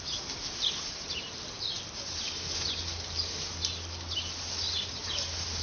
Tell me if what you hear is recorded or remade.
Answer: recorded